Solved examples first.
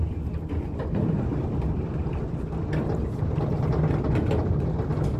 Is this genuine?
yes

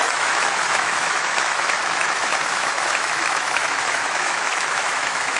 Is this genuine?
no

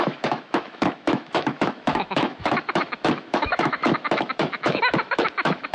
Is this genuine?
no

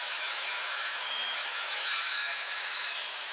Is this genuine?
no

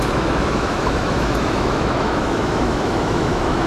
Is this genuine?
no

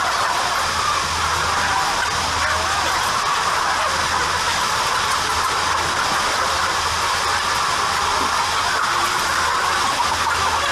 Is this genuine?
yes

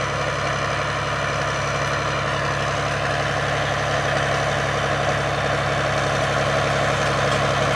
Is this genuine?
yes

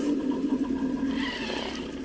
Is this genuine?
yes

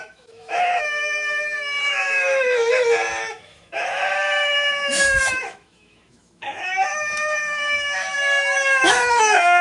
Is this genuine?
no